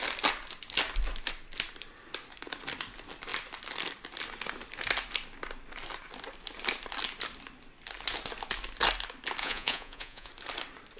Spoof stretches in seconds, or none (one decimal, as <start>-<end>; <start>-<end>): 9.4-10.3